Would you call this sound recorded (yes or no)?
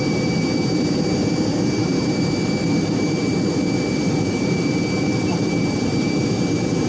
no